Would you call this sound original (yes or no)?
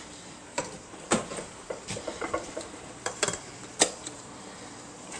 no